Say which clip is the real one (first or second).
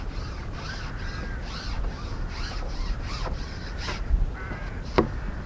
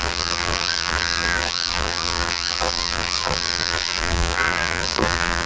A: first